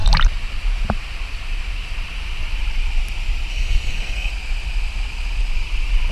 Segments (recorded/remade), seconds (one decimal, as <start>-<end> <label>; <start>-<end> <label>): 0.0-3.5 recorded; 3.5-4.3 remade; 4.3-6.1 recorded